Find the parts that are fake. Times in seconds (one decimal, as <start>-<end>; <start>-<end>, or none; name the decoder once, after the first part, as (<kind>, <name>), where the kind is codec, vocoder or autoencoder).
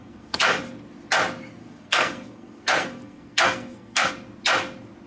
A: 0.0-0.6 (codec, SNAC); 1.6-4.1